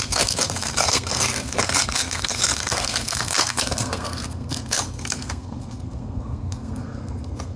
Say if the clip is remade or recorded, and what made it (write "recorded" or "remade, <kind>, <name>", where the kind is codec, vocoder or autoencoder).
remade, codec, SNAC